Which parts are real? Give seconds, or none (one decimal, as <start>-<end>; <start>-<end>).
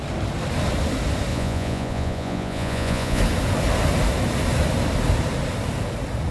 0.0-1.3; 3.2-6.3